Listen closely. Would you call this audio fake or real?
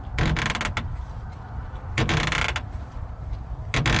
real